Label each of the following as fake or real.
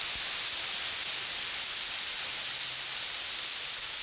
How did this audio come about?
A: real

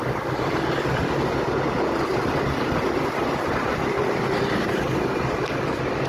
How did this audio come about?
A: fake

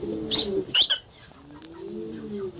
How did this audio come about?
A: fake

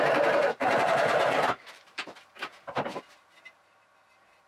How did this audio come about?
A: fake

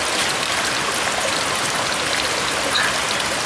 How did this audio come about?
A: real